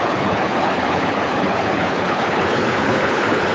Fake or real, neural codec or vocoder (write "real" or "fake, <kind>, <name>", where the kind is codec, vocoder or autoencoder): fake, codec, HILCodec